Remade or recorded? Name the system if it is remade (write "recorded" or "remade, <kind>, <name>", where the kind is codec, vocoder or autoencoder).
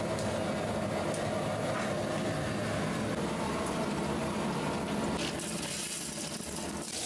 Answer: recorded